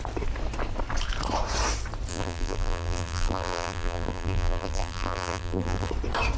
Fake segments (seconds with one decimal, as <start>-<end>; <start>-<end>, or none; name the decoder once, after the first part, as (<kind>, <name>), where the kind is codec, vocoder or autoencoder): 2.1-5.9 (vocoder, BigVGAN v2)